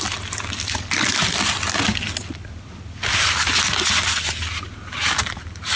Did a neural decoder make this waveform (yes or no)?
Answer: no